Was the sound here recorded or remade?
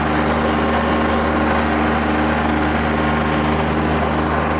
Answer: recorded